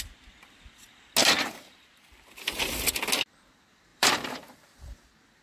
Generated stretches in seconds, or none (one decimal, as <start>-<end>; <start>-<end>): 1.2-2.6; 3.9-4.4